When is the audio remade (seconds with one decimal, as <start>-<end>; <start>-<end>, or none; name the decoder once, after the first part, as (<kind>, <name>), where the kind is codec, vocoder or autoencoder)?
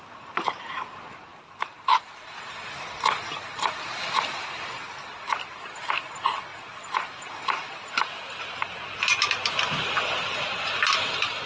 1.3-2.4 (vocoder, BigVGAN v2)